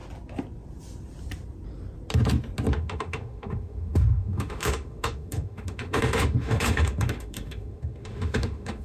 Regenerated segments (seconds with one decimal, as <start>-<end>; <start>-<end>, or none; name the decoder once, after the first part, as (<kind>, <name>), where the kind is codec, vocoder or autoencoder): 2.7-8.8 (autoencoder, DAC-VAE)